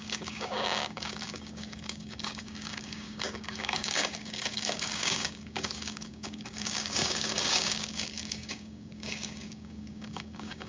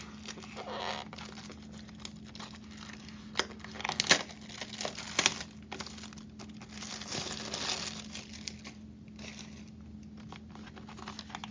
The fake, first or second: first